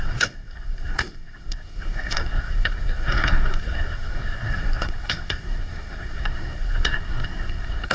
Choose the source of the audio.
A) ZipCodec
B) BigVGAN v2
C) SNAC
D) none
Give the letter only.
C